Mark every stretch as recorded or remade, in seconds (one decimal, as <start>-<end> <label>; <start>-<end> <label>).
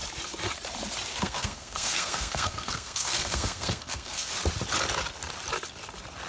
0.0-1.1 recorded; 1.1-4.3 remade; 4.3-6.3 recorded